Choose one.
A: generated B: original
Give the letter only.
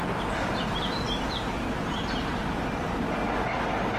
B